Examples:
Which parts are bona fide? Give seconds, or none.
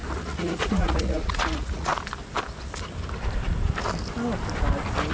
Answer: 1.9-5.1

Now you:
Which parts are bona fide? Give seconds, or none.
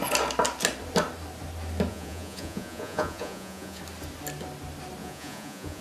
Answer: 0.0-1.9; 3.8-5.0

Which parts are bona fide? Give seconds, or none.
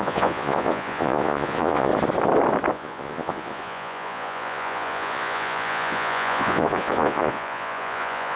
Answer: 1.9-2.7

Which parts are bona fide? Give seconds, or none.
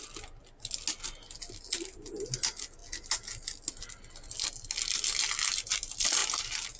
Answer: 0.0-6.8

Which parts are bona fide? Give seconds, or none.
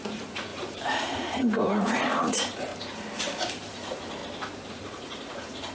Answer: 2.7-3.7; 4.2-4.7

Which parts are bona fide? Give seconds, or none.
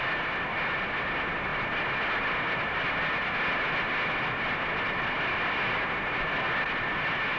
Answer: 0.0-7.4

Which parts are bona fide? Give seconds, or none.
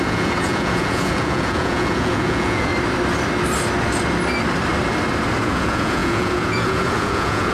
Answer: 2.7-5.4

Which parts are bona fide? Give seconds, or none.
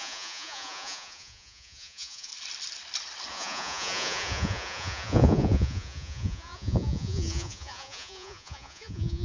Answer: 2.3-3.3